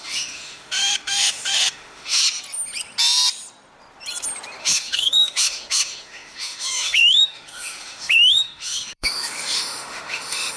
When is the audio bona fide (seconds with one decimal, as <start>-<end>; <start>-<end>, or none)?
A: 2.2-4.6